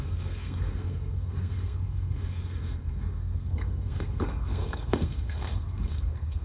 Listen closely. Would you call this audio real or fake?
fake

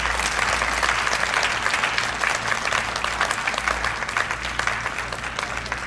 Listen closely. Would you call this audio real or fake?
real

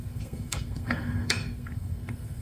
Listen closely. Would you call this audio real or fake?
fake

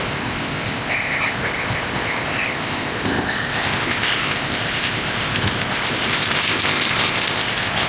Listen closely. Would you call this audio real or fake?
fake